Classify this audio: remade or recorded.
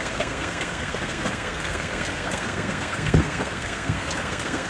remade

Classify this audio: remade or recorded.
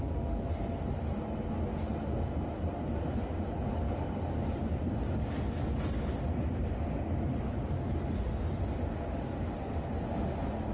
recorded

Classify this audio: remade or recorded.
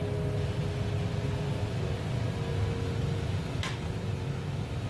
recorded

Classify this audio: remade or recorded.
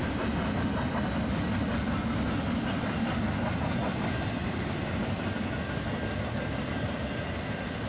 recorded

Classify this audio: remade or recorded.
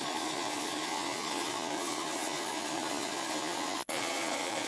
remade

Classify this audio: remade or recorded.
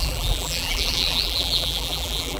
remade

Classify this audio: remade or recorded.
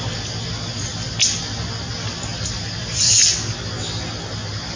recorded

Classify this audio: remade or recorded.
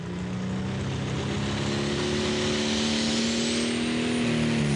recorded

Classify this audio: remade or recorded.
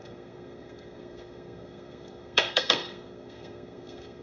remade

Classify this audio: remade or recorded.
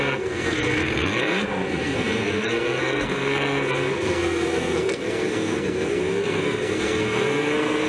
remade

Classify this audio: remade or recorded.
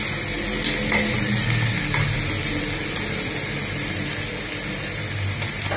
recorded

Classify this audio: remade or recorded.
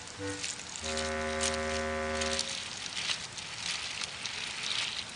recorded